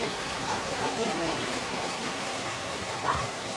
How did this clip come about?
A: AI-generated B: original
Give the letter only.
A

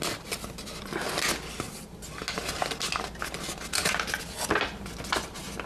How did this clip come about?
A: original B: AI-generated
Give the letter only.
A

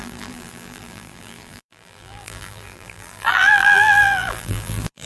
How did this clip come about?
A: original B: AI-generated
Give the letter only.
B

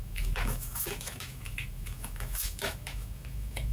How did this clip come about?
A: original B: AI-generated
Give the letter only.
B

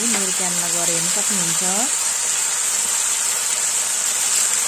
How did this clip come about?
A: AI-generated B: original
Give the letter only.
B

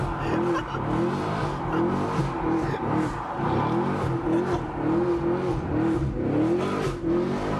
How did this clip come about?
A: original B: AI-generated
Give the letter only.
A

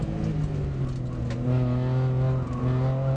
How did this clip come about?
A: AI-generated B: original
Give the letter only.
B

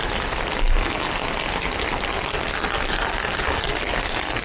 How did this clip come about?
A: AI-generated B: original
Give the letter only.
B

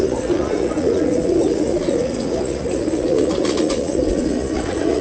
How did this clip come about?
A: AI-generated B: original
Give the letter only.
A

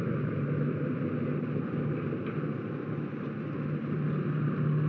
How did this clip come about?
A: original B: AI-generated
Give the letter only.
A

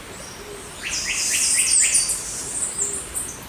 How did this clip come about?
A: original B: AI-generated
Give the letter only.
A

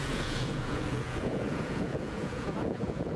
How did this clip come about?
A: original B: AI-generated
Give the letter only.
B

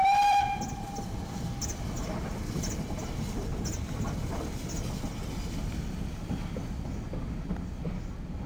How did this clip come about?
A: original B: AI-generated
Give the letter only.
A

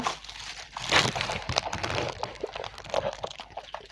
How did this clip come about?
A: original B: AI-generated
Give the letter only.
A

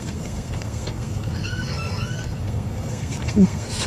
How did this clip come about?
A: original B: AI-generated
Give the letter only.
B